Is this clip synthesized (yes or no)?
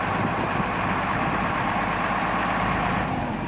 yes